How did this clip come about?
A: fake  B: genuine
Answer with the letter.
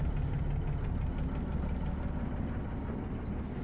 B